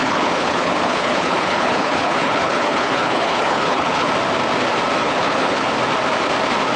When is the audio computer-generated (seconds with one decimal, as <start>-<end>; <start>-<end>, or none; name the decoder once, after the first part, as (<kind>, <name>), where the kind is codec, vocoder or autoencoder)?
0.0-4.1 (codec, HILCodec); 5.0-5.7